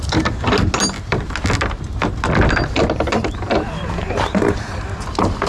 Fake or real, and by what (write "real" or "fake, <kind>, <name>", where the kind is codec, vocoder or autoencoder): real